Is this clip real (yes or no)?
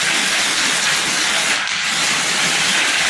yes